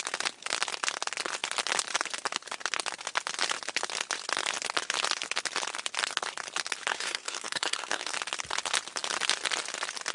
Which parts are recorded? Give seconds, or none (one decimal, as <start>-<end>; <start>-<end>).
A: 0.0-6.9; 8.1-10.1